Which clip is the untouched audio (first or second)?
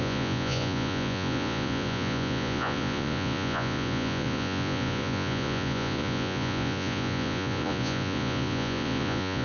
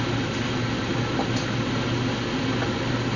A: second